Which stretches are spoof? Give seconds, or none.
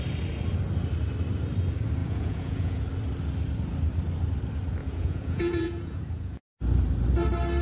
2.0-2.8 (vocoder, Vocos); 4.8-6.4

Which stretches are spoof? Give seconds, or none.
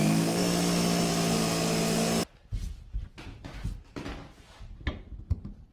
none